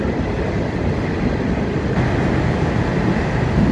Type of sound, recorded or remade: recorded